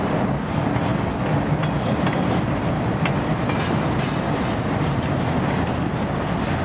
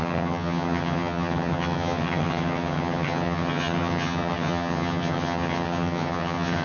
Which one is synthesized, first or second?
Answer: second